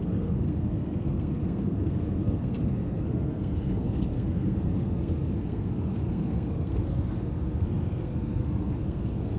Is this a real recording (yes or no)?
no